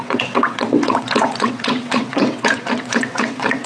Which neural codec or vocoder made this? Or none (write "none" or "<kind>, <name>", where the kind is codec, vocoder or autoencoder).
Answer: vocoder, WaveNeXt